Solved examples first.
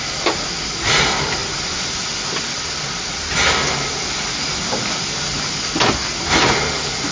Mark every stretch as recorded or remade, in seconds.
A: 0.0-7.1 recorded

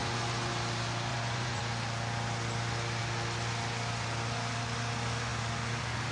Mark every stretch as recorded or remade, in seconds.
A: 0.0-0.5 remade; 0.5-1.1 recorded; 1.1-1.6 remade; 1.6-6.1 recorded

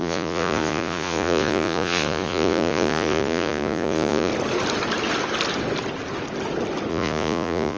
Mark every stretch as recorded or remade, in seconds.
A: 0.0-4.3 remade; 4.3-6.9 recorded; 6.9-7.8 remade

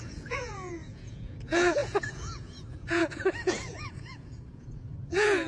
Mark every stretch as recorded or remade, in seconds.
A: 0.0-5.5 remade

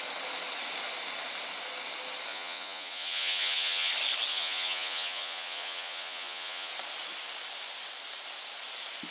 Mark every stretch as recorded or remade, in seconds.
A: 0.0-2.3 recorded; 2.3-3.9 remade; 3.9-4.3 recorded; 4.3-6.7 remade; 6.7-9.1 recorded

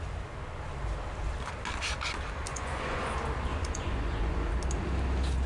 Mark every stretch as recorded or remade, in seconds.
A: 0.0-2.5 recorded; 2.5-3.1 remade; 3.1-3.5 recorded; 3.5-4.5 remade; 4.5-5.5 recorded

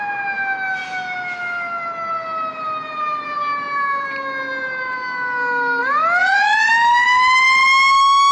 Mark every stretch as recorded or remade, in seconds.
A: 0.0-6.2 recorded; 6.2-6.7 remade; 6.7-8.3 recorded

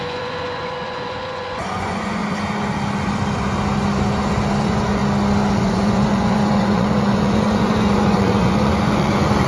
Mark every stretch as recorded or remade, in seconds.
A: 0.0-2.2 remade; 2.2-4.6 recorded; 4.6-5.0 remade; 5.0-5.5 recorded; 5.5-9.5 remade